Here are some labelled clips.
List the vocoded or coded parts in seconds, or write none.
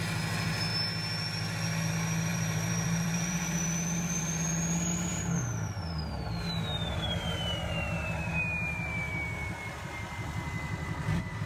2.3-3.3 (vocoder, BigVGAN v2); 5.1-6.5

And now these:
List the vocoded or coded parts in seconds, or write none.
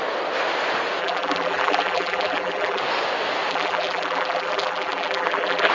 1.0-2.8 (vocoder, BigVGAN v2); 3.5-5.7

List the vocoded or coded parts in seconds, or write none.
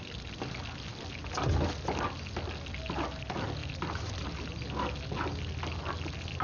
3.6-4.2 (vocoder, BigVGAN v2)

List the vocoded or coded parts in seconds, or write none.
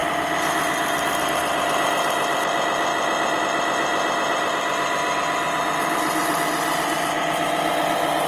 3.9-4.5 (vocoder, BigVGAN v2)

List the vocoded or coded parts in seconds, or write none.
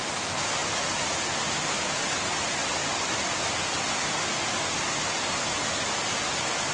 none